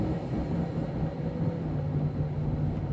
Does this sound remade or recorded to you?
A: recorded